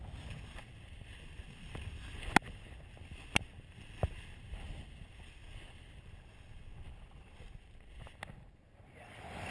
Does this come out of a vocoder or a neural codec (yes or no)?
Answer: no